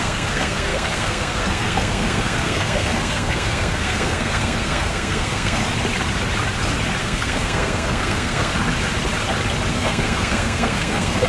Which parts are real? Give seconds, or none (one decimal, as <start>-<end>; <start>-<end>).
5.6-7.0; 8.5-9.7